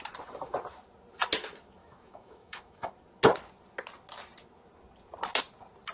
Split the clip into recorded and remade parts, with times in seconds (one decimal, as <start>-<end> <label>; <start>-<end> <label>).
0.0-1.8 recorded; 1.8-2.9 remade; 2.9-5.9 recorded

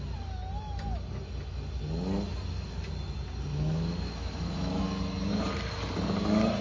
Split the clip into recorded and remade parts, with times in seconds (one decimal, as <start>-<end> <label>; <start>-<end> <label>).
0.0-3.5 recorded; 3.5-4.8 remade; 4.8-6.6 recorded

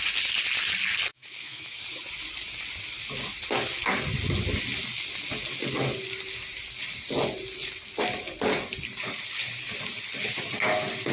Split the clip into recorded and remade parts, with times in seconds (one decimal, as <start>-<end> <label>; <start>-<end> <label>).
0.0-1.1 recorded; 1.1-1.8 remade; 1.8-11.1 recorded

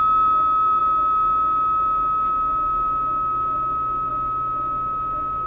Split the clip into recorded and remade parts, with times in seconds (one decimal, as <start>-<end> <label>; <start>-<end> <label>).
0.0-5.5 recorded

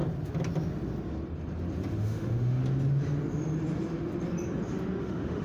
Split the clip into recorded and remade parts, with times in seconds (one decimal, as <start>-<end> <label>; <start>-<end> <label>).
0.0-2.0 recorded; 2.0-2.6 remade; 2.6-5.0 recorded; 5.0-5.4 remade

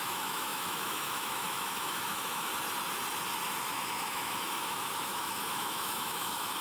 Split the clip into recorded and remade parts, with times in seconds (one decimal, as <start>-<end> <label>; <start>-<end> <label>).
0.0-2.5 remade; 2.5-3.6 recorded; 3.6-6.6 remade

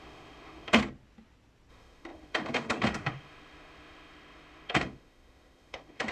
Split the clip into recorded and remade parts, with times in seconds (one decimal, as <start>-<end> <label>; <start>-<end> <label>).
0.0-0.8 remade; 0.8-1.7 recorded; 1.7-6.1 remade

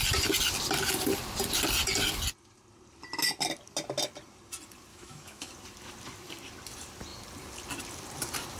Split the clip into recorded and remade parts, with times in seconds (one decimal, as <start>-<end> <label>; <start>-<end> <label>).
0.0-4.9 recorded; 4.9-5.5 remade; 5.5-8.6 recorded